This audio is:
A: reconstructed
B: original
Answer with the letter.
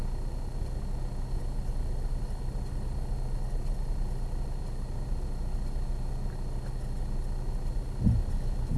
B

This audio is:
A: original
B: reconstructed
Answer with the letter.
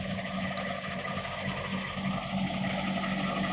A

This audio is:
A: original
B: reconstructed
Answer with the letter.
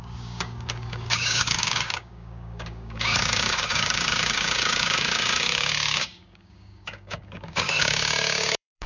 B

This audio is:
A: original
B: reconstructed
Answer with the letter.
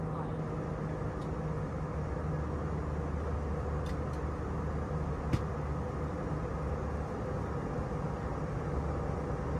A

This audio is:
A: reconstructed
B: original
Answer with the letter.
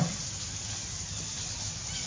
B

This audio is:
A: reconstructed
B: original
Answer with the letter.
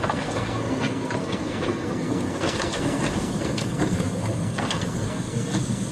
A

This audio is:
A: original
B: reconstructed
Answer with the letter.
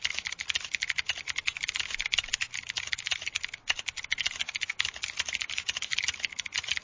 A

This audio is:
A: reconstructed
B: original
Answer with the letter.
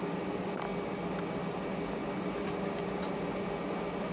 B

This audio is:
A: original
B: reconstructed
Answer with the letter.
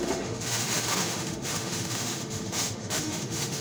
B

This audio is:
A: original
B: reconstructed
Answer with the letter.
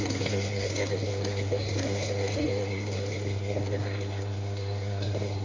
B